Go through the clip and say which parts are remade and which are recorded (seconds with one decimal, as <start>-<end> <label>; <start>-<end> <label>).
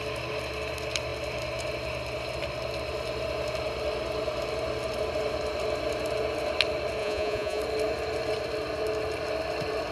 0.0-7.0 recorded; 7.0-7.6 remade; 7.6-9.9 recorded